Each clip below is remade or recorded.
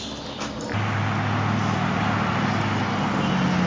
recorded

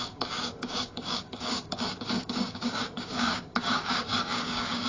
remade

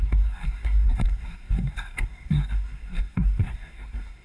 remade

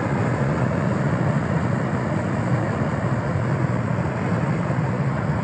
remade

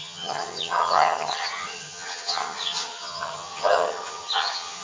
remade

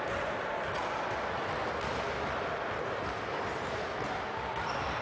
recorded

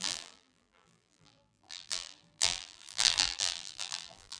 remade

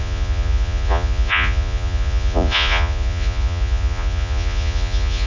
remade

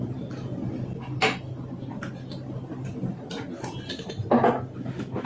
recorded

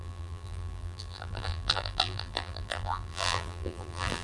remade